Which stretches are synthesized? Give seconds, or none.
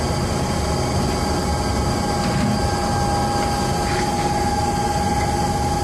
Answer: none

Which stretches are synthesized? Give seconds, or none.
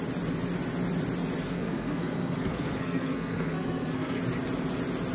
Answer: 1.4-4.2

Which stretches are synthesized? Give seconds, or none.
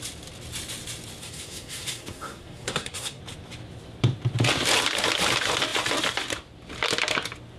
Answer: 1.2-3.2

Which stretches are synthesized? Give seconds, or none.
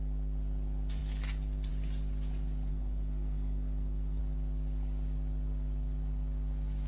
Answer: 2.7-4.2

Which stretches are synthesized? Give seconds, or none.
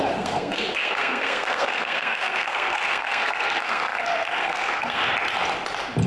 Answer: 0.0-5.0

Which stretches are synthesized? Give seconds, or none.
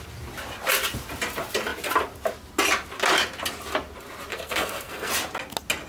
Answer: 4.3-5.1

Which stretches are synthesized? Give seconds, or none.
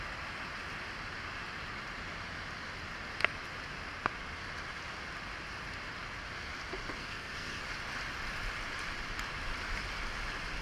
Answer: 7.0-7.6